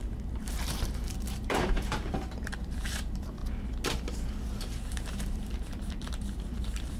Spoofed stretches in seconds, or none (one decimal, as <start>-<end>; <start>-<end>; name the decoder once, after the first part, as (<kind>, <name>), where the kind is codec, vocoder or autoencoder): 0.0-3.4 (vocoder, BigVGAN v2); 4.6-7.0